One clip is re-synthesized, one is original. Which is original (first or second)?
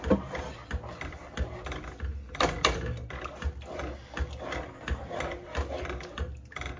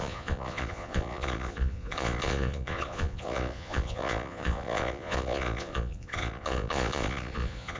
first